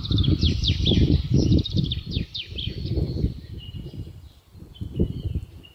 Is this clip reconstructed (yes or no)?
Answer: yes